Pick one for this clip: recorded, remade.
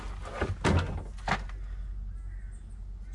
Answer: recorded